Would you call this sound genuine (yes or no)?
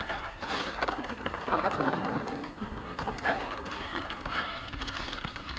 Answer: no